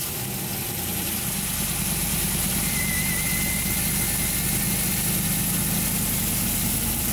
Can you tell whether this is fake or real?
real